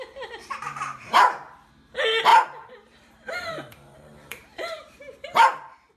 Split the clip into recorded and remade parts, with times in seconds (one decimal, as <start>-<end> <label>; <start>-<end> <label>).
0.0-0.7 recorded; 0.7-1.7 remade; 1.7-2.3 recorded; 2.3-6.0 remade